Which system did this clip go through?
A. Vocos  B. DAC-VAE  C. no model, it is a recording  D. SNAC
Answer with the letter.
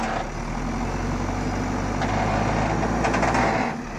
C